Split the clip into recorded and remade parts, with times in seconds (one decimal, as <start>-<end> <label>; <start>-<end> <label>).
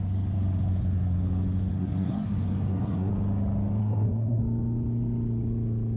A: 0.0-1.7 recorded; 1.7-3.1 remade; 3.1-3.8 recorded; 3.8-4.4 remade; 4.4-6.0 recorded